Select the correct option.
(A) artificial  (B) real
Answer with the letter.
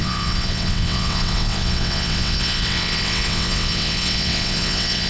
A